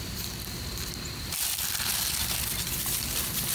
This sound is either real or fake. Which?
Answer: real